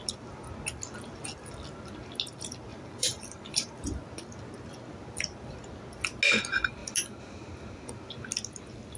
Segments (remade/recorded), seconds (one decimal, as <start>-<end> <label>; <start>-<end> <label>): 0.0-2.7 recorded; 2.7-3.7 remade; 3.7-9.0 recorded